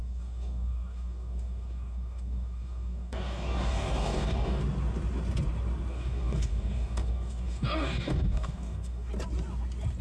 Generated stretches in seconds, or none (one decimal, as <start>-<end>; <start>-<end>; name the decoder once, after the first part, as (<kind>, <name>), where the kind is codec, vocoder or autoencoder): 0.0-4.6 (codec, DAC); 5.9-9.1

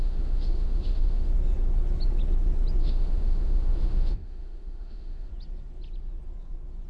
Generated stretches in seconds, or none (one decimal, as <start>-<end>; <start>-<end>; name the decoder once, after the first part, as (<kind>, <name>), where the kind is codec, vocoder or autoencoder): 0.0-1.3 (autoencoder, DAC-VAE); 2.8-5.3